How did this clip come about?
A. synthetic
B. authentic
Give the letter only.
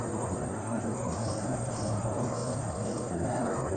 A